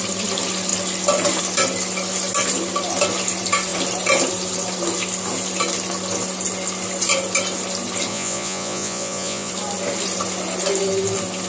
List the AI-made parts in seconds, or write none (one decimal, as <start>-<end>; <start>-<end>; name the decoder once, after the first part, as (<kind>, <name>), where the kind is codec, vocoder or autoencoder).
8.1-9.5 (vocoder, Vocos)